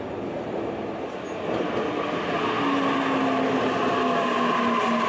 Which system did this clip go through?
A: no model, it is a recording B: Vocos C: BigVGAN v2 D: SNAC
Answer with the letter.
A